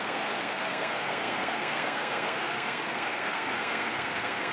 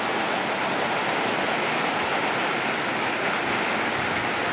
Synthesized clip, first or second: first